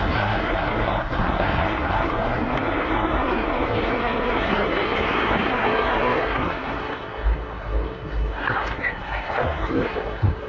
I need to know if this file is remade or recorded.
remade